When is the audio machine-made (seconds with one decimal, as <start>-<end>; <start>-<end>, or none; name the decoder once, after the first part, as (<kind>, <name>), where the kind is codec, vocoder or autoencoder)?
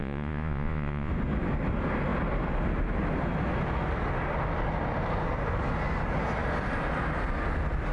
0.0-1.1 (vocoder, Vocos)